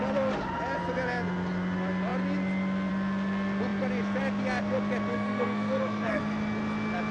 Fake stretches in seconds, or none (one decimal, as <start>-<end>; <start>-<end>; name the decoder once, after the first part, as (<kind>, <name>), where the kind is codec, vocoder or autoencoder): 5.1-6.2 (codec, SNAC)